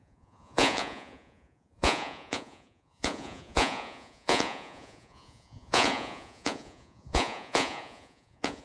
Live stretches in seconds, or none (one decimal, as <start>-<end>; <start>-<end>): none